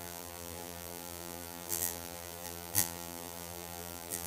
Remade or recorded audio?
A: remade